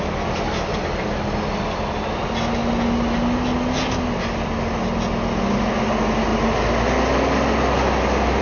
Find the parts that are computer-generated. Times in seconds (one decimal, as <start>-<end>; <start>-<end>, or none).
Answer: none